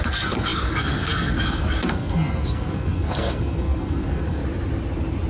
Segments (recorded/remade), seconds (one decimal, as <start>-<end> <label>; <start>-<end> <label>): 0.0-4.4 remade; 4.4-5.3 recorded